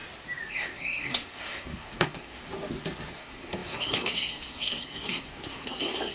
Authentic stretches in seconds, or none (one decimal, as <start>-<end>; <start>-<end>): 0.0-0.5; 2.4-3.1